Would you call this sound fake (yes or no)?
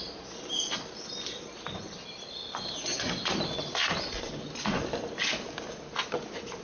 no